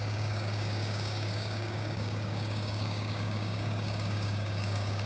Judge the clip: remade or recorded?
remade